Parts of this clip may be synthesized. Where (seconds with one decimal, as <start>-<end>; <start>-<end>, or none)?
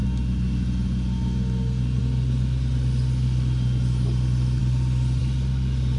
none